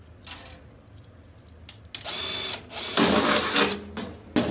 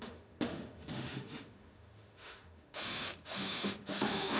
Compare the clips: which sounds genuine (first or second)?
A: first